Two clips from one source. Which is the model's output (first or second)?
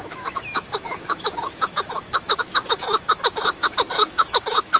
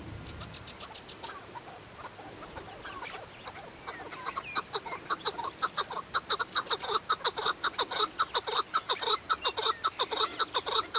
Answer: first